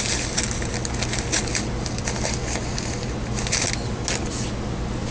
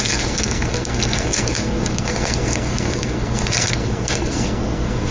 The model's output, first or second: second